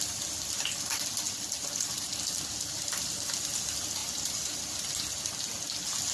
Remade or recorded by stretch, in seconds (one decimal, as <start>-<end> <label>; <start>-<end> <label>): 0.0-6.1 recorded